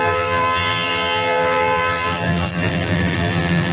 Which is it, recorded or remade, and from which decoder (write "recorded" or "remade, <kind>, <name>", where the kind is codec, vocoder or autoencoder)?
remade, vocoder, BigVGAN v2